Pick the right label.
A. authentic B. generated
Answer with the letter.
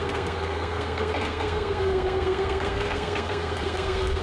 B